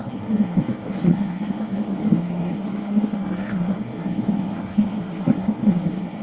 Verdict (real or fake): fake